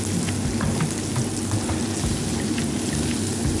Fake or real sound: real